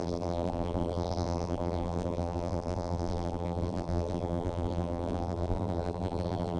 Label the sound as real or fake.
fake